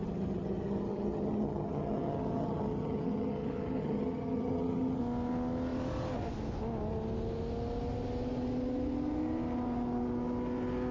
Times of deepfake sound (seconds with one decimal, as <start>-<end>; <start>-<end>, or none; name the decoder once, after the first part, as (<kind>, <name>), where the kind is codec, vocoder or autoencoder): 0.0-5.0 (vocoder, HiFi-GAN)